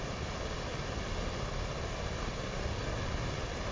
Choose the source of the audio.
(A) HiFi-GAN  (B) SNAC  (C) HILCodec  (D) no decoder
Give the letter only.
D